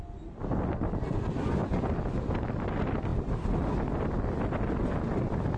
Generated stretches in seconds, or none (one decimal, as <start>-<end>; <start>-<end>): none